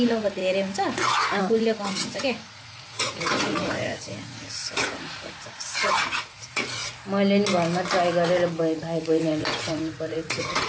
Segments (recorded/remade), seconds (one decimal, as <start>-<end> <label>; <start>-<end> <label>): 0.0-0.4 remade; 0.4-1.4 recorded; 1.4-6.8 remade; 6.8-8.6 recorded; 8.6-10.7 remade